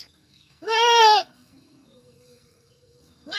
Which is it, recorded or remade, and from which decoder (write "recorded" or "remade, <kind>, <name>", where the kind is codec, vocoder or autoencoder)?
remade, codec, SNAC